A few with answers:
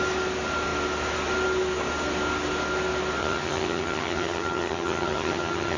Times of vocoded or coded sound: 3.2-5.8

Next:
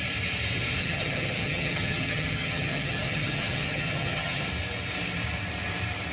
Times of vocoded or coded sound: 0.8-4.5

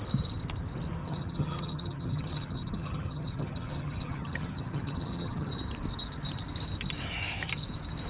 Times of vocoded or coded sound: 1.0-5.5

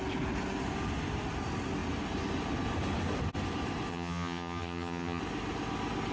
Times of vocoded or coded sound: 3.9-5.2